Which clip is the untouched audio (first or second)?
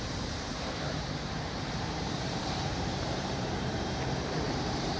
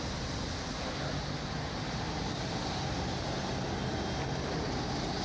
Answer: second